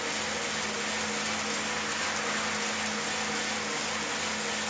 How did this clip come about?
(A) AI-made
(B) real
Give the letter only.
B